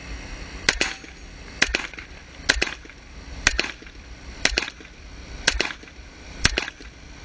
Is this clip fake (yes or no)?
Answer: no